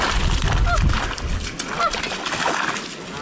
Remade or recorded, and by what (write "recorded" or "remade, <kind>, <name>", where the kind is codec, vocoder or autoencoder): recorded